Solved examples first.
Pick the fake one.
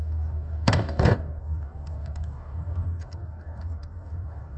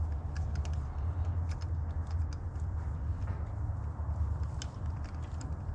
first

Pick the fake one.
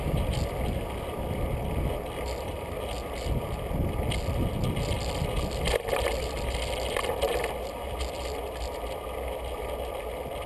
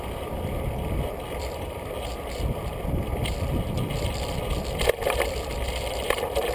second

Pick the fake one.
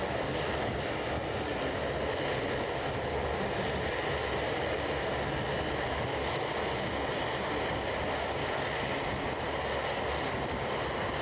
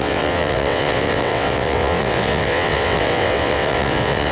second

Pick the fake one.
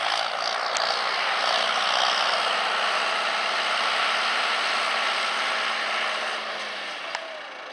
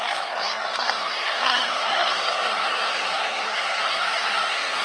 second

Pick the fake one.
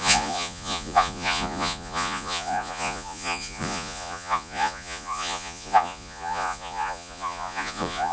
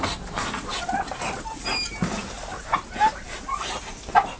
first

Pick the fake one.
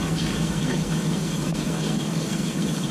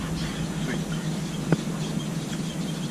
first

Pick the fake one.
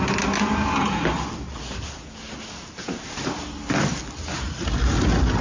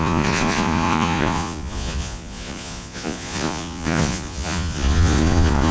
second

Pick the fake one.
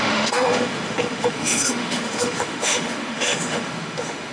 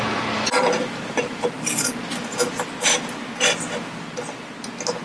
first